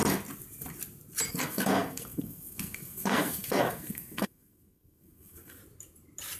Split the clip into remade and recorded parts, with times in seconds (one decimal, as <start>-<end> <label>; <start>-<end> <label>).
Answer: 0.0-1.3 recorded; 1.3-5.6 remade; 5.6-6.4 recorded